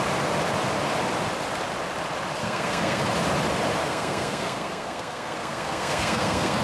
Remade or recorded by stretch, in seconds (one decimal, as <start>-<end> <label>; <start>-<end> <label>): 0.0-2.4 recorded; 2.4-3.0 remade; 3.0-3.8 recorded; 3.8-6.6 remade